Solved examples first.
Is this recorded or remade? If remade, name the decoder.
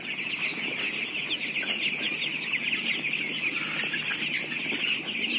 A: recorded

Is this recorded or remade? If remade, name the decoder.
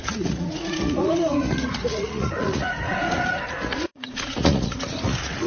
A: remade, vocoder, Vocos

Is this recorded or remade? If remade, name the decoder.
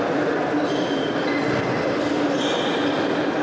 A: recorded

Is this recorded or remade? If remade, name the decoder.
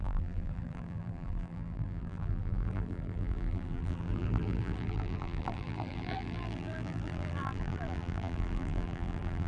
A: remade, vocoder, BigVGAN v2